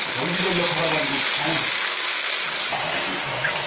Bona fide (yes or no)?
yes